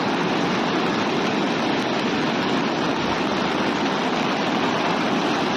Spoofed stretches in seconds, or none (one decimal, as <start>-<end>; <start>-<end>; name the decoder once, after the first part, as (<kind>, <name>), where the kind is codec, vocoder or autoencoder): 3.3-5.6 (vocoder, BigVGAN v2)